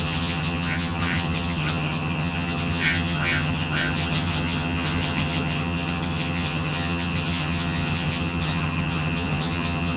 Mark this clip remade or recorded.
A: remade